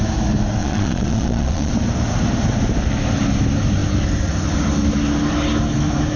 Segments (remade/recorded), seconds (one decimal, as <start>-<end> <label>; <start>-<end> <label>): 0.0-0.6 recorded; 0.6-1.7 remade; 1.7-6.2 recorded